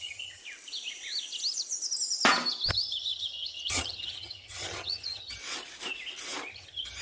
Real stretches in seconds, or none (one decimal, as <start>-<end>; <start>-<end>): 0.4-2.7; 5.4-6.5